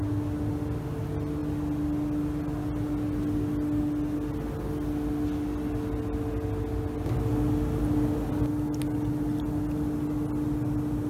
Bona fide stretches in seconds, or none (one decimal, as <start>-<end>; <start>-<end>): 0.0-11.1